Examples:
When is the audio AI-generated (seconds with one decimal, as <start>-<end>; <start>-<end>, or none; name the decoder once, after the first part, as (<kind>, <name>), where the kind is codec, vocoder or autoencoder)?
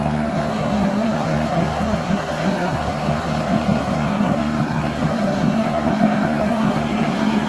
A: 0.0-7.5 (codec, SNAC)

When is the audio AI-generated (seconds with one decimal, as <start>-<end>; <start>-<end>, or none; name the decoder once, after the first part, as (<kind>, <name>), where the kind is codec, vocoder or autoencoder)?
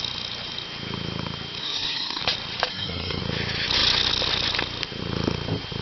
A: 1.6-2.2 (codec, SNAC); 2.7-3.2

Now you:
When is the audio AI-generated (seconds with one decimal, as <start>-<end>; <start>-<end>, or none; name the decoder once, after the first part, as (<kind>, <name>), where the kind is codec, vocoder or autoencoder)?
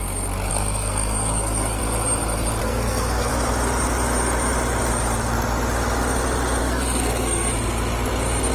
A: 0.5-1.8 (codec, SNAC); 2.6-3.3; 6.6-7.5